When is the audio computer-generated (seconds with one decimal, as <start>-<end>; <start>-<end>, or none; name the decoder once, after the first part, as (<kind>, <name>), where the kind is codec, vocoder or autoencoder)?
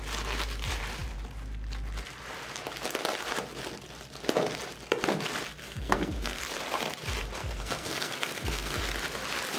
5.6-6.4 (codec, SNAC); 7.4-8.8